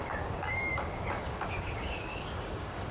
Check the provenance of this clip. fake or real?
fake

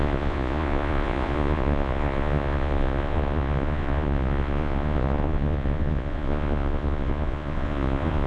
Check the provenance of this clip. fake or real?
fake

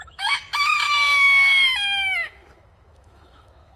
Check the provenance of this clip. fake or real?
fake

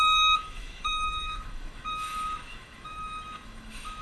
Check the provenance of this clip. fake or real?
fake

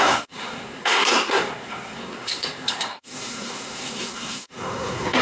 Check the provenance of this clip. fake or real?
fake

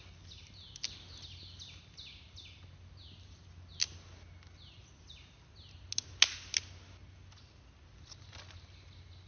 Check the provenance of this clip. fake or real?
real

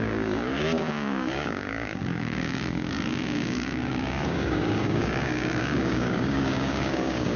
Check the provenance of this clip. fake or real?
fake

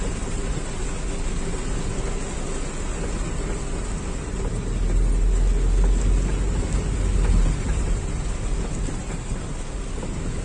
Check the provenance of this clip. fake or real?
real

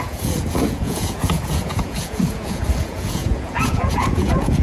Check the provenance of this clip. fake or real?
fake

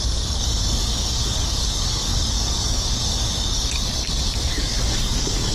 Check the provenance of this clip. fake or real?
fake